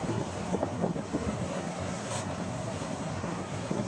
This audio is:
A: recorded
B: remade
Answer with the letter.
B